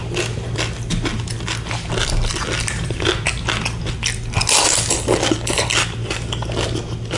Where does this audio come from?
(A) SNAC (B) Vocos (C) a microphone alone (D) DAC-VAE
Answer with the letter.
C